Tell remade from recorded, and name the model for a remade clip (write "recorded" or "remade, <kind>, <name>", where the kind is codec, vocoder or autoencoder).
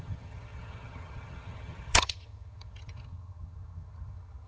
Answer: remade, vocoder, HiFi-GAN